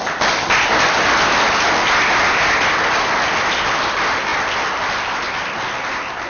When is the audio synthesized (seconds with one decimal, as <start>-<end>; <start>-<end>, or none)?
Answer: none